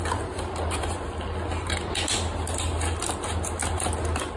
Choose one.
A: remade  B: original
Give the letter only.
B